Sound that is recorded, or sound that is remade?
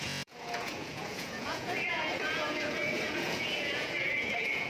remade